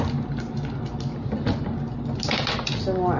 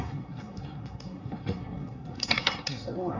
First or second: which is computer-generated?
second